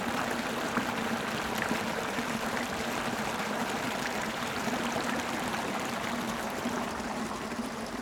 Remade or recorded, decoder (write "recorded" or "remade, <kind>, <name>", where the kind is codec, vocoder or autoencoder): remade, vocoder, BigVGAN v2